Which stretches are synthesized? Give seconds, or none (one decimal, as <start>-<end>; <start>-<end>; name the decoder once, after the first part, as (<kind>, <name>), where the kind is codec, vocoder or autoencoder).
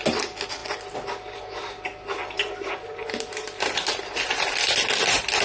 none